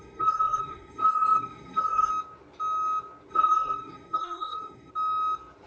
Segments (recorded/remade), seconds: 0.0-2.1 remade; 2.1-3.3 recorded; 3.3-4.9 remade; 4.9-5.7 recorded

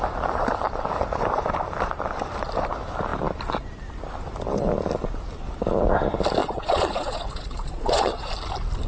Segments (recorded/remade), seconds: 0.0-6.4 recorded; 6.4-8.3 remade; 8.3-8.9 recorded

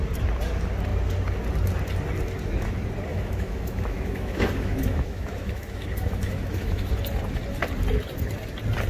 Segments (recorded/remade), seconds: 0.0-3.1 recorded; 3.1-6.9 remade; 6.9-8.9 recorded